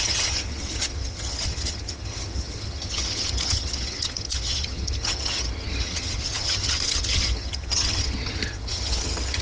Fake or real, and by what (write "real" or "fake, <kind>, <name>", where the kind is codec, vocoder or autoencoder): fake, vocoder, HiFi-GAN